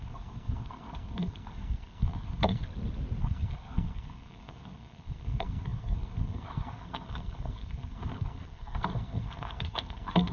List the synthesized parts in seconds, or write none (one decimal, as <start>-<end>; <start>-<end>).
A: 0.0-2.6; 3.2-10.3